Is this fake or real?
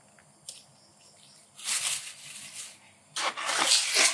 real